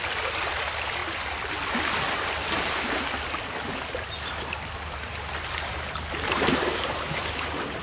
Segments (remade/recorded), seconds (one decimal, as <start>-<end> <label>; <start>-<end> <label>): 0.0-7.8 recorded